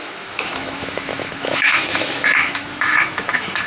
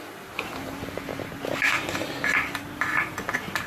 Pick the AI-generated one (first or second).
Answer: first